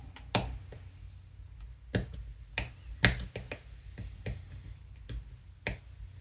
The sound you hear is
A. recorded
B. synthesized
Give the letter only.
A